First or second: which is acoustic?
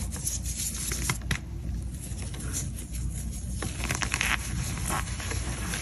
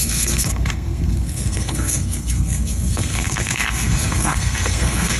first